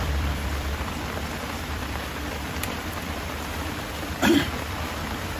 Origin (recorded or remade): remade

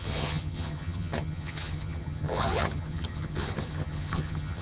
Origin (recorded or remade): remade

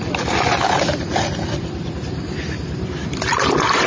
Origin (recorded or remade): recorded